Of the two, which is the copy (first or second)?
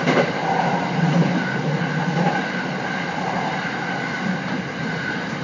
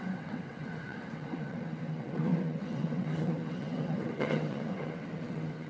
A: second